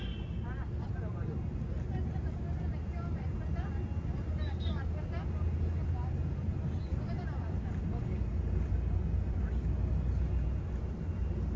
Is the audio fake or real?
real